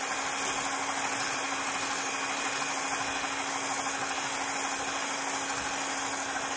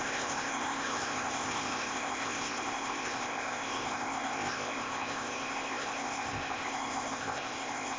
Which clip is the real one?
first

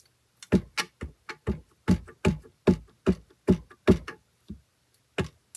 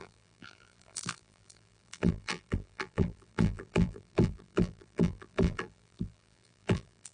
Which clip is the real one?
first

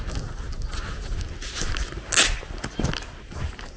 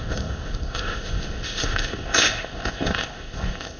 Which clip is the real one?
first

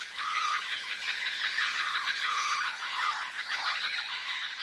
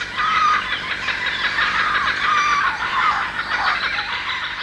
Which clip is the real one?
second